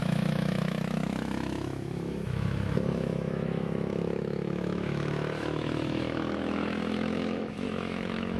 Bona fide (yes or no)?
no